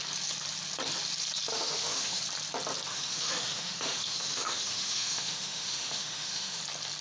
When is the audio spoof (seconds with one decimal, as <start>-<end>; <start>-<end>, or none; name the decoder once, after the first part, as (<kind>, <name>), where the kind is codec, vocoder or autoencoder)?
1.5-2.2 (autoencoder, DAC-VAE); 2.9-6.6